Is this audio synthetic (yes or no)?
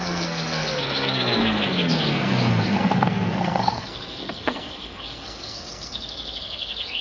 yes